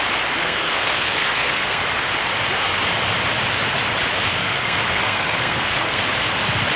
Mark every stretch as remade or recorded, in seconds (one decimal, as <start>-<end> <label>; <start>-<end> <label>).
0.0-0.4 recorded; 0.4-1.8 remade; 1.8-4.4 recorded; 4.4-6.0 remade; 6.0-6.8 recorded